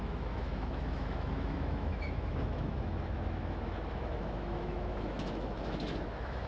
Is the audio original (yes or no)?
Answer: no